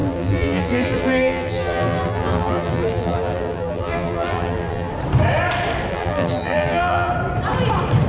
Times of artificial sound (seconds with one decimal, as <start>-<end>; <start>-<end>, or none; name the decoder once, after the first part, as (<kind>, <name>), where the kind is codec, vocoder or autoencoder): 0.0-4.9 (vocoder, BigVGAN v2); 5.9-7.1